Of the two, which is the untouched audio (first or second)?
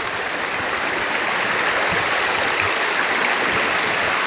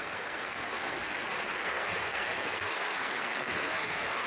first